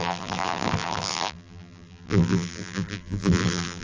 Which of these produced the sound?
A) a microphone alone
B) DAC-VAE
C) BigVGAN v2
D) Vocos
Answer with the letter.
C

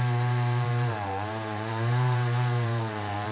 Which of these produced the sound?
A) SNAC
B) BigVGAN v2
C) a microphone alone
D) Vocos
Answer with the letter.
B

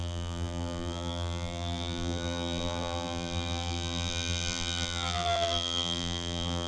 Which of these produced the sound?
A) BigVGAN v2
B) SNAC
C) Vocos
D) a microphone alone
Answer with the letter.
A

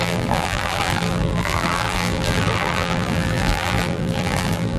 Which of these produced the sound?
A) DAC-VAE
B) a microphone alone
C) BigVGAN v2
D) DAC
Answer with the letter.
C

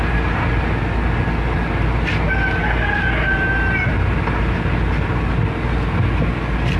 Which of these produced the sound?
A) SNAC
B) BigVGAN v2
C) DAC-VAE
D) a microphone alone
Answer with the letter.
D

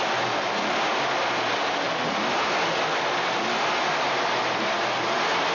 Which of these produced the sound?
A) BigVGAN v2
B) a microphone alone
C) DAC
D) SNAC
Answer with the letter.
B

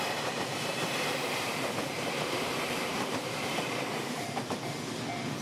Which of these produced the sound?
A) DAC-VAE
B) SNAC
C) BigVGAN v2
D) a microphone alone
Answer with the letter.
C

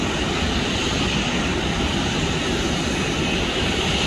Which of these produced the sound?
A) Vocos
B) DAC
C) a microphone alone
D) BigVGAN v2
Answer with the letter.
C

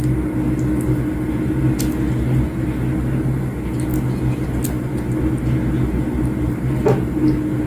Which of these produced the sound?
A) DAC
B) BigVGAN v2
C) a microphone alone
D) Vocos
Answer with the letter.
C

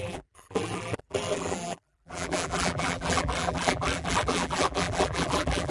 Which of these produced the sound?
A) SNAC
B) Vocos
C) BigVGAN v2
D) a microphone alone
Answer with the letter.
C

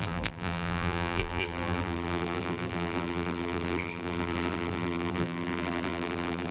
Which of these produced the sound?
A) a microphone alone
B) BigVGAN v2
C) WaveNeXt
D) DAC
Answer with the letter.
B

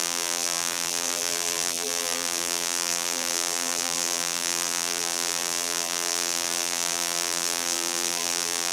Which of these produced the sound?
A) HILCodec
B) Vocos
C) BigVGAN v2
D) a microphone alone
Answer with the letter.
C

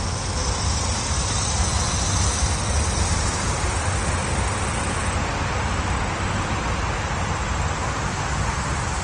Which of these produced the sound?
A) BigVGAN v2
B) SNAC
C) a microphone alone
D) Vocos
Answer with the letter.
C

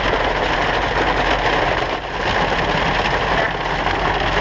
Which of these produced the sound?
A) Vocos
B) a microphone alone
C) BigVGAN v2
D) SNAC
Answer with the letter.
B